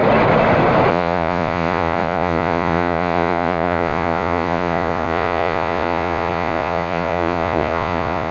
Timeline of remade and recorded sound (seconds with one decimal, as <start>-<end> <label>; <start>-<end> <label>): 0.0-0.9 recorded; 0.9-8.3 remade